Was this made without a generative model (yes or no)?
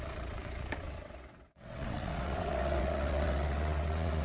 no